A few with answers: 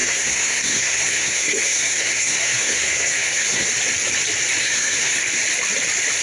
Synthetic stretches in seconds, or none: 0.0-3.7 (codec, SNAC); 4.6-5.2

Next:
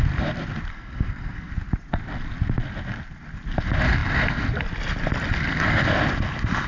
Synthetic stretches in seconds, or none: 0.7-1.5 (codec, SNAC)

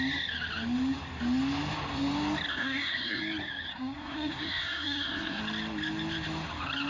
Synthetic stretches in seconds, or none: 2.5-3.2 (codec, SNAC); 3.7-5.4

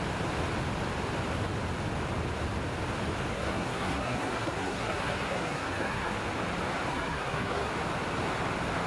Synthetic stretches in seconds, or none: 3.3-6.2 (codec, SNAC); 6.9-7.7